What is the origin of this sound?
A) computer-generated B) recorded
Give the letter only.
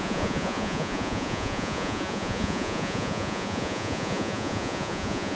A